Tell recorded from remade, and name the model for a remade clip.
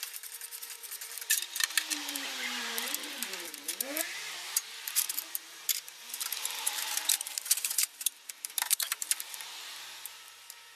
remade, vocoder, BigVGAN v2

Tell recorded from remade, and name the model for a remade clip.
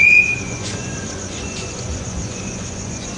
remade, vocoder, Vocos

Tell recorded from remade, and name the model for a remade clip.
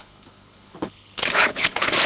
remade, codec, HILCodec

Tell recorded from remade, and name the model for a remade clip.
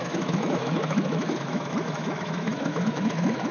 remade, autoencoder, DAC-VAE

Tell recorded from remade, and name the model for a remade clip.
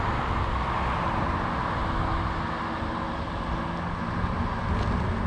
recorded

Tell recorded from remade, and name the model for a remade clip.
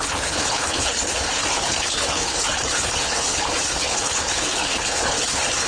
remade, codec, HILCodec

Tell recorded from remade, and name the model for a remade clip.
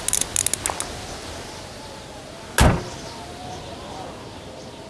recorded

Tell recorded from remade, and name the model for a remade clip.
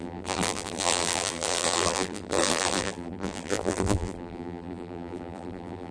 remade, vocoder, BigVGAN v2